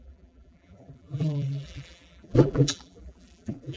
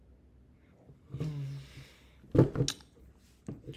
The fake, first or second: first